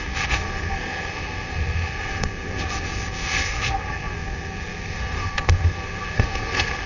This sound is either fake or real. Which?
fake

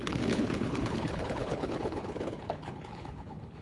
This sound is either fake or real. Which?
fake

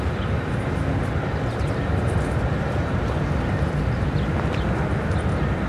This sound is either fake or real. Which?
real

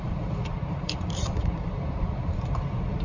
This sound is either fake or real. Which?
fake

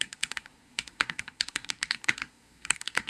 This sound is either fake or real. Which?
fake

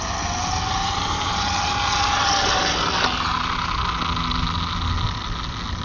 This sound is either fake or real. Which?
real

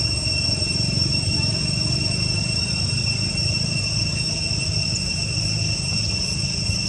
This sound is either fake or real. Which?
real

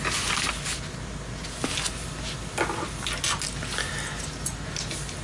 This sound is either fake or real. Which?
real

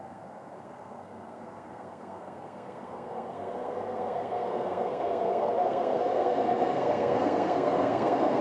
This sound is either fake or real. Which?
fake